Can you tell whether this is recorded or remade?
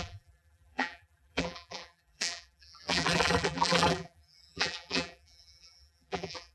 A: remade